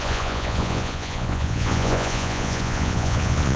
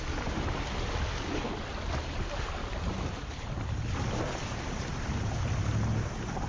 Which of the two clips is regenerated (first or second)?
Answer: first